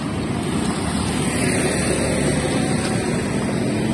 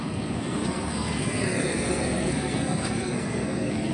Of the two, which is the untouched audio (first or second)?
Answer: first